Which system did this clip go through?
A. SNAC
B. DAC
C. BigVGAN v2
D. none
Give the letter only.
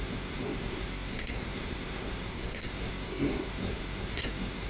A